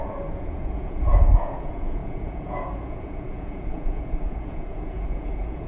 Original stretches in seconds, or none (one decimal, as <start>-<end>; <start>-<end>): none